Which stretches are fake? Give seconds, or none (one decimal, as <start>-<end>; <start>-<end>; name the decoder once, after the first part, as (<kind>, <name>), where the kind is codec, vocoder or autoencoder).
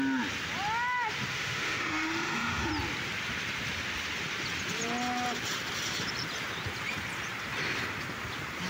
1.3-2.7 (autoencoder, DAC-VAE)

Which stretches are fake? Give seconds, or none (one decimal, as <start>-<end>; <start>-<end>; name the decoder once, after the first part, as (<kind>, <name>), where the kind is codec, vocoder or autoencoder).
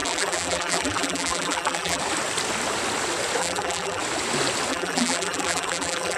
0.0-2.0 (vocoder, BigVGAN v2); 3.4-4.0; 4.7-6.2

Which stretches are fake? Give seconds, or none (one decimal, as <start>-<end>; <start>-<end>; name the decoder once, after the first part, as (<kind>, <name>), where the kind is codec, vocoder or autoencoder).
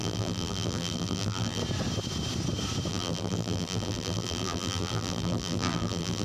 0.0-1.6 (vocoder, BigVGAN v2); 2.9-6.2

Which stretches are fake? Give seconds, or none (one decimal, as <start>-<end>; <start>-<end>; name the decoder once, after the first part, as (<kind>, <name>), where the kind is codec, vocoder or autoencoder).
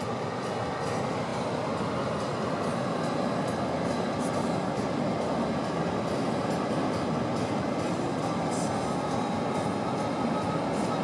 none